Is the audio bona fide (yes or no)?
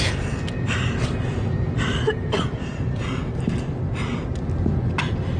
yes